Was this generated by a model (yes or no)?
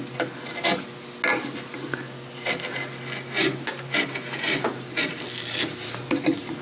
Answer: no